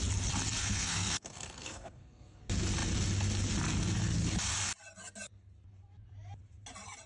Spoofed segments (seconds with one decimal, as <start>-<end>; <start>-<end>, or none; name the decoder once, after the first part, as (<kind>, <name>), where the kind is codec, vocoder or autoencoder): 0.6-2.4 (codec, SNAC)